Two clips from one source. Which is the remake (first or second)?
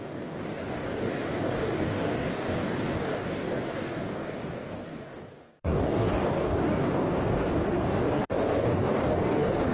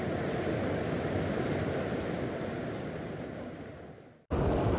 first